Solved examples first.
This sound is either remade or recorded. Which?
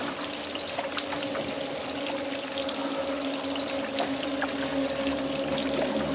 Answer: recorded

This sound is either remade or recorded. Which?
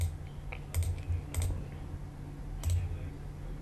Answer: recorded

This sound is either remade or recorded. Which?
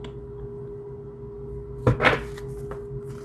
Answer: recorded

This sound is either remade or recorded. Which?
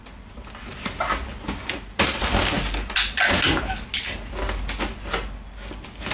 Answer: recorded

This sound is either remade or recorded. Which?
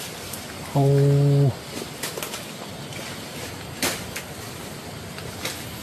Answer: recorded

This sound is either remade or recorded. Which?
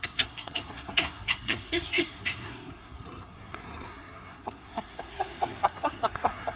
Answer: remade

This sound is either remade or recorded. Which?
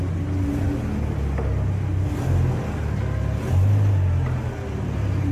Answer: recorded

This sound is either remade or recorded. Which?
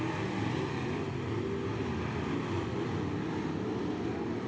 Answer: recorded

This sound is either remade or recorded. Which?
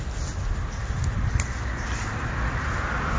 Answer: recorded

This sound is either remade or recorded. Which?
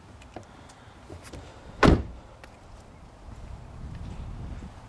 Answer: recorded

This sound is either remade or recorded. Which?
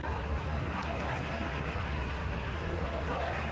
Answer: remade